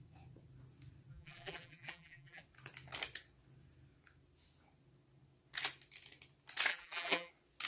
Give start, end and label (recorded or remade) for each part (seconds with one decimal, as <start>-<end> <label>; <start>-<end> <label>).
0.0-1.1 recorded; 1.1-2.4 remade; 2.4-6.7 recorded; 6.7-7.3 remade; 7.3-7.7 recorded